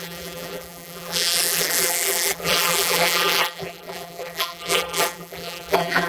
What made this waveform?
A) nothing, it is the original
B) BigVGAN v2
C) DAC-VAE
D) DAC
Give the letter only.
B